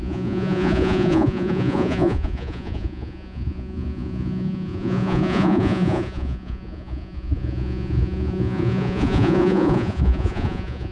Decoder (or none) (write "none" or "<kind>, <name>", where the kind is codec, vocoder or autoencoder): vocoder, Vocos